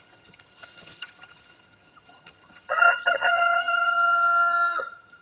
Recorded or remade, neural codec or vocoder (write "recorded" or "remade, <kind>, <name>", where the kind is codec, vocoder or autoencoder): remade, vocoder, HiFi-GAN